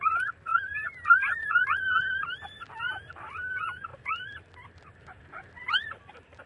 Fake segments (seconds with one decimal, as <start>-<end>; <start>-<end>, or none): 3.9-5.5